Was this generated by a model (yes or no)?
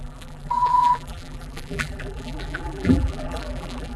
yes